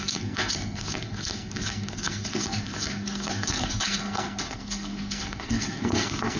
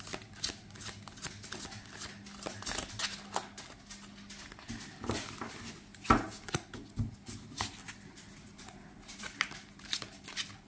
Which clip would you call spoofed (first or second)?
first